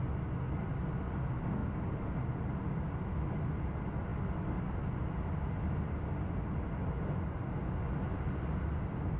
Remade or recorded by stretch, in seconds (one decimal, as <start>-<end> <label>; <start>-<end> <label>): 0.0-9.2 recorded